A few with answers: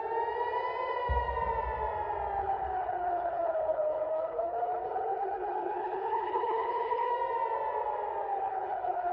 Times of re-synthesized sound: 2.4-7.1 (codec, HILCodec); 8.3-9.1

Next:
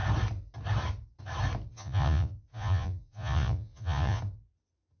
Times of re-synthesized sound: 1.7-4.2 (vocoder, Vocos)

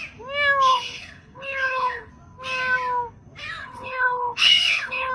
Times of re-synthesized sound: 0.7-2.1 (codec, HILCodec); 3.6-5.1